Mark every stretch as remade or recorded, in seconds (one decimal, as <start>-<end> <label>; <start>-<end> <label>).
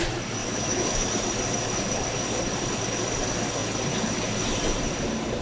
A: 0.0-0.4 recorded; 0.4-1.1 remade; 1.1-5.4 recorded